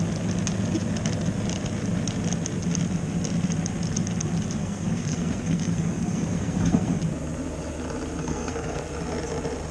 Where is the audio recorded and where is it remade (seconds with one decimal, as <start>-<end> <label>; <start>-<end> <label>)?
0.0-4.6 recorded; 4.6-7.0 remade; 7.0-8.2 recorded; 8.2-8.8 remade; 8.8-9.7 recorded